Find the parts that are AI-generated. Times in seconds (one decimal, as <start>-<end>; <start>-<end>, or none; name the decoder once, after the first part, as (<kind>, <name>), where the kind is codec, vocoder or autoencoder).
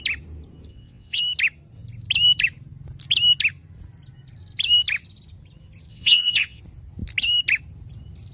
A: 0.7-1.2 (vocoder, WaveNeXt); 5.9-6.6